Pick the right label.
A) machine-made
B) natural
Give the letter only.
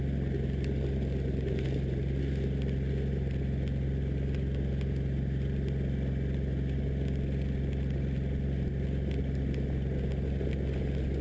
B